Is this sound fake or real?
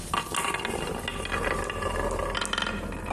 real